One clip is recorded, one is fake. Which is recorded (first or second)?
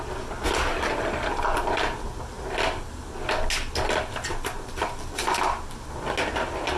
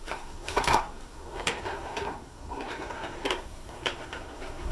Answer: first